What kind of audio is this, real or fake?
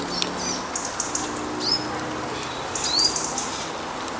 real